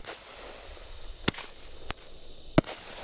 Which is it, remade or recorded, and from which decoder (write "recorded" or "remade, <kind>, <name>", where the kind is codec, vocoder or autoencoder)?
recorded